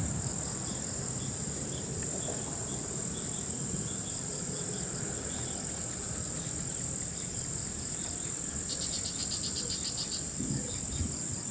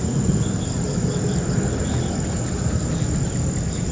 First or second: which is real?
second